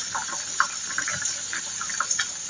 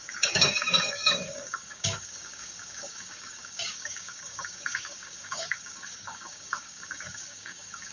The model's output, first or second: second